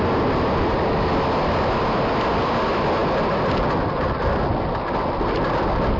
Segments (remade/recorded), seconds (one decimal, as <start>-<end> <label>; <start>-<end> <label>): 0.0-6.0 recorded